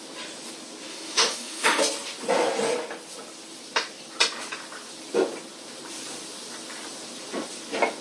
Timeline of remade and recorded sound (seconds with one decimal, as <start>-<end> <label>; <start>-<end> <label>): 0.0-0.9 recorded; 0.9-1.8 remade; 1.8-8.0 recorded